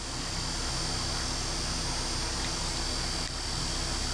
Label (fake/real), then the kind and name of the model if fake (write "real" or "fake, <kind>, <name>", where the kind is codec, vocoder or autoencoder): real